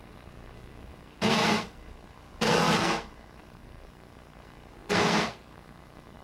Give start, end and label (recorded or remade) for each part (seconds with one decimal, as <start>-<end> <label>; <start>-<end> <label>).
0.0-6.2 remade